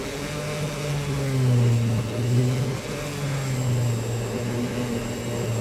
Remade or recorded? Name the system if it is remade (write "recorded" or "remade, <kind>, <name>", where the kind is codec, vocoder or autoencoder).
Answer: recorded